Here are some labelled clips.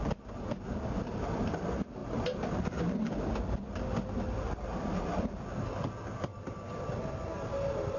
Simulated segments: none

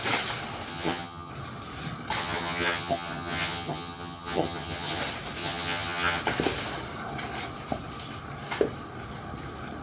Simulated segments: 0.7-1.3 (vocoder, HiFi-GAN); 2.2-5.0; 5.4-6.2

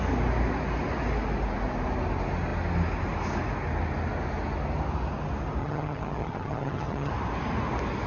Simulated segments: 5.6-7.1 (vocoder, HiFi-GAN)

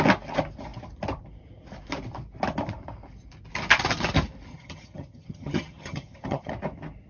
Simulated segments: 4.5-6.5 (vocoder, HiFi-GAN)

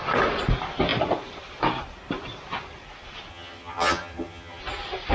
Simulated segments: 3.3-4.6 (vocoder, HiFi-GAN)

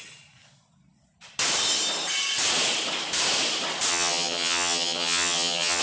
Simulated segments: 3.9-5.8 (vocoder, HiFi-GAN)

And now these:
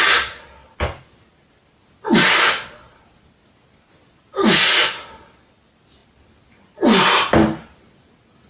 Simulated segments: none

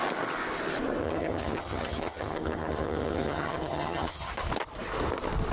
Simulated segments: 1.0-4.3 (vocoder, HiFi-GAN)